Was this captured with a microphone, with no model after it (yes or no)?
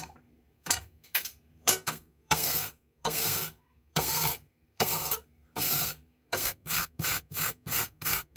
no